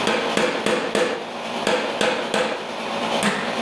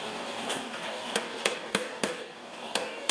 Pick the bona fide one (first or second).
first